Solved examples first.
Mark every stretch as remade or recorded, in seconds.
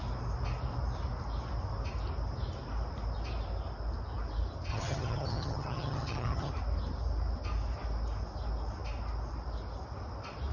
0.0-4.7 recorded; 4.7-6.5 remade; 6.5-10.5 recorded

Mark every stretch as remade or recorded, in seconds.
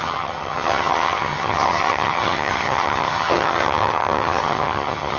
0.0-5.2 remade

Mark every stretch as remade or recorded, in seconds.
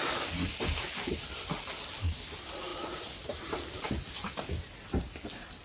0.0-5.6 recorded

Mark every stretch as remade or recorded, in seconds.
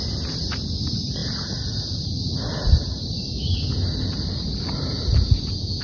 0.0-5.8 recorded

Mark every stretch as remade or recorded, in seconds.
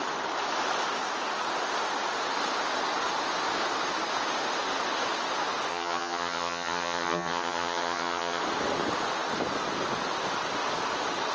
0.0-5.7 recorded; 5.7-8.4 remade; 8.4-11.3 recorded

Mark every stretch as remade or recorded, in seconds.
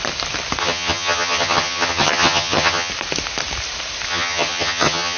0.0-0.6 recorded; 0.6-2.9 remade; 2.9-4.1 recorded; 4.1-5.2 remade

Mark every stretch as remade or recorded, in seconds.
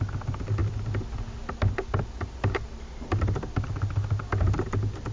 0.0-5.1 recorded